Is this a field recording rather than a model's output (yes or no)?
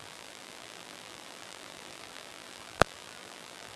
no